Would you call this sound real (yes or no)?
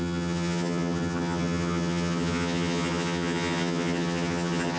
no